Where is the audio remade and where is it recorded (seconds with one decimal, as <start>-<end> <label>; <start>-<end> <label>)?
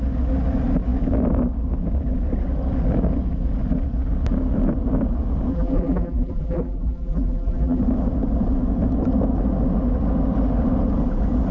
0.0-5.5 recorded; 5.5-7.8 remade; 7.8-11.5 recorded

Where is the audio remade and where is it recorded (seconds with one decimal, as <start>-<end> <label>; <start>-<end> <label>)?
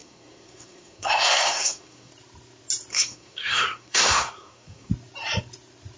0.0-2.1 remade; 2.1-2.9 recorded; 2.9-4.9 remade; 4.9-6.0 recorded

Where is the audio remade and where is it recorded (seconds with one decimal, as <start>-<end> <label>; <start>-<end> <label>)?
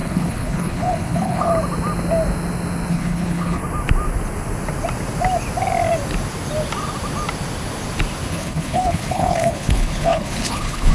0.0-1.5 remade; 1.5-2.9 recorded; 2.9-3.6 remade; 3.6-8.3 recorded; 8.3-10.9 remade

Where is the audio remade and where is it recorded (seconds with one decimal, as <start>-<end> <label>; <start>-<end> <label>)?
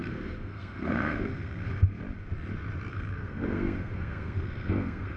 0.0-2.0 remade; 2.0-2.9 recorded; 2.9-5.2 remade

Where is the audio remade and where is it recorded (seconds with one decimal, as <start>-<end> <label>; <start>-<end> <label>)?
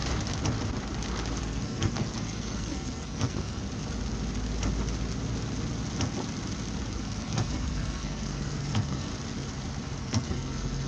0.0-1.4 recorded; 1.4-3.6 remade; 3.6-6.9 recorded; 6.9-9.1 remade; 9.1-10.0 recorded; 10.0-10.9 remade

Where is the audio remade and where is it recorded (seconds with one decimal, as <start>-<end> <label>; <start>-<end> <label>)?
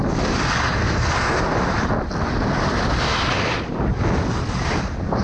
0.0-0.8 recorded; 0.8-1.4 remade; 1.4-5.2 recorded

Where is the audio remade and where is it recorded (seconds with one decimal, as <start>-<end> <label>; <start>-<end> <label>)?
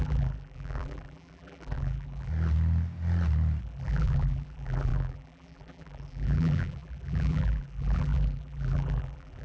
0.0-2.3 remade; 2.3-3.6 recorded; 3.6-9.4 remade